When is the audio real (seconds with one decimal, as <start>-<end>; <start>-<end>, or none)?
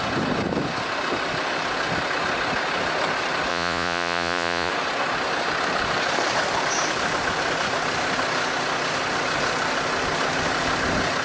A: 0.0-3.5; 4.7-11.2